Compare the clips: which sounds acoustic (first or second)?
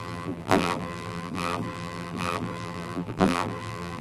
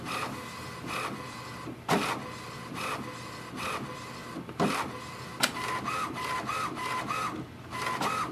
second